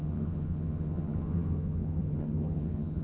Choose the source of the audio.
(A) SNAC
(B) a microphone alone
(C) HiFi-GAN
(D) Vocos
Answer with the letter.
C